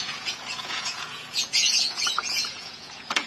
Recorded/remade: remade